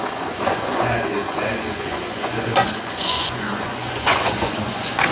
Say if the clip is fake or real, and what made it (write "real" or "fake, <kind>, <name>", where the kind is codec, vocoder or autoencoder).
fake, vocoder, Vocos